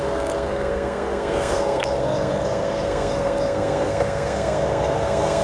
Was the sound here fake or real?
fake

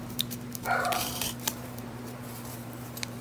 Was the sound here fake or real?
fake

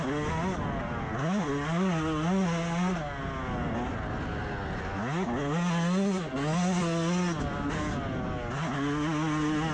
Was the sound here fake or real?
real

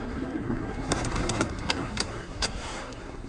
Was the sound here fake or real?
fake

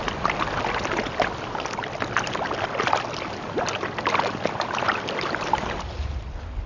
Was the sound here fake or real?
real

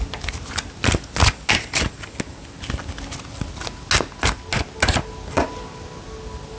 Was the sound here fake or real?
real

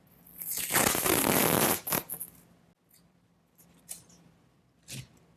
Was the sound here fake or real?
real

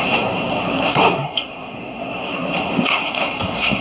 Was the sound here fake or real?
fake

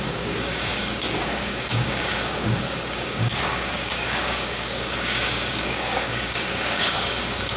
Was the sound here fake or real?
fake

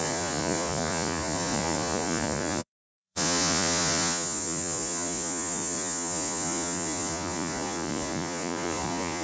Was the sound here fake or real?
fake